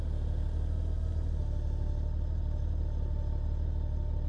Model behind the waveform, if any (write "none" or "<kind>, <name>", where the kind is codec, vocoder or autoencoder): none